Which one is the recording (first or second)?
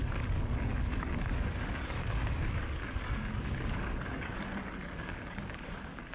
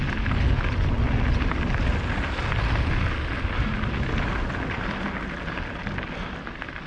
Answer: second